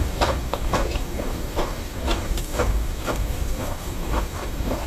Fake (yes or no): yes